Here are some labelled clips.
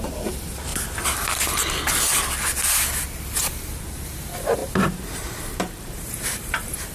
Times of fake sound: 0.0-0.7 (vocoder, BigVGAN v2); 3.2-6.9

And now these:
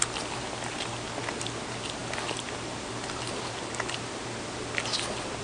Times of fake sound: none

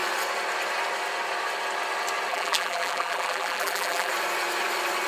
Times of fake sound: 2.3-4.1 (vocoder, BigVGAN v2)